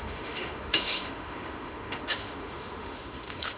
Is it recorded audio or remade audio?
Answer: remade